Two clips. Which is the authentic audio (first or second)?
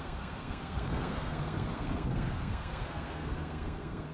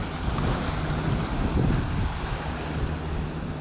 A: second